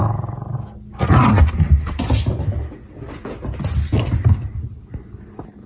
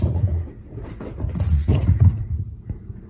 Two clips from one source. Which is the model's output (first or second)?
second